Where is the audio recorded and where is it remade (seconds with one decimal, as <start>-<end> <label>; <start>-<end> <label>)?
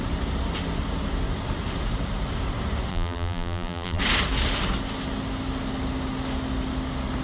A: 0.0-2.9 recorded; 2.9-4.0 remade; 4.0-7.2 recorded